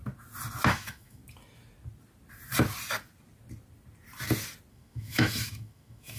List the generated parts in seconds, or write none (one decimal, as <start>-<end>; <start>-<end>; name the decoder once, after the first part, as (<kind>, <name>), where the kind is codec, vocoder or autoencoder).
0.7-1.2 (autoencoder, DAC-VAE); 4.7-6.2